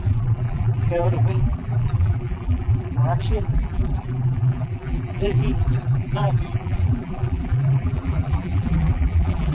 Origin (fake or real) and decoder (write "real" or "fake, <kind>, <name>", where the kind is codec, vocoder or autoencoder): fake, vocoder, BigVGAN v2